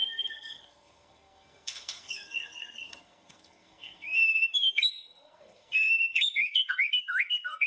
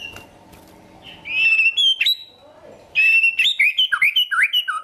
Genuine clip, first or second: second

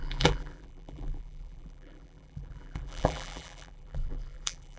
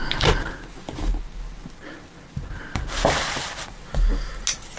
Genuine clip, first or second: second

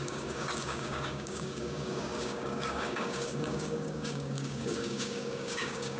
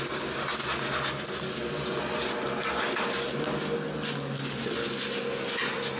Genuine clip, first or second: second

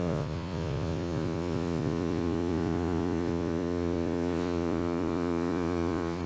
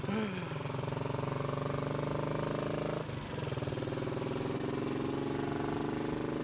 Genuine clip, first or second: second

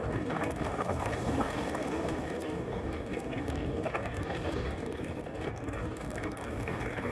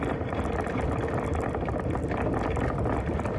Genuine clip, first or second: second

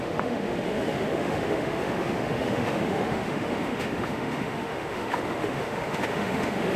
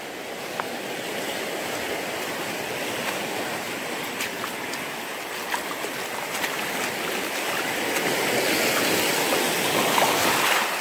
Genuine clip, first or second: second